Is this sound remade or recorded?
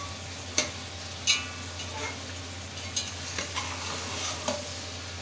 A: recorded